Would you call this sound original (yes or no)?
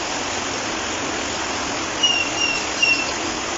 yes